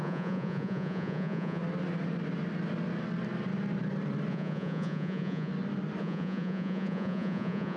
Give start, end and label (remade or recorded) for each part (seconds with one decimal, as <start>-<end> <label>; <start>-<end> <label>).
0.0-1.6 remade; 1.6-4.3 recorded; 4.3-5.5 remade; 5.5-6.0 recorded; 6.0-7.8 remade